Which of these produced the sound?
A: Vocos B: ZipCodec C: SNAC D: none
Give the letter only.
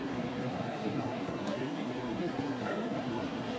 C